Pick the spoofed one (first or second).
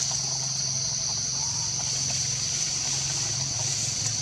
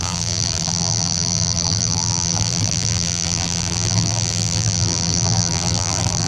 second